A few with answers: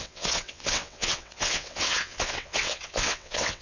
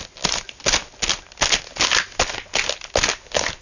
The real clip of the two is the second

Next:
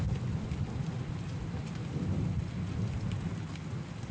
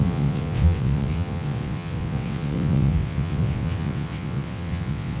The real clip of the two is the first